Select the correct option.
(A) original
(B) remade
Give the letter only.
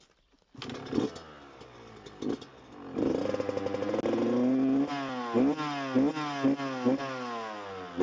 A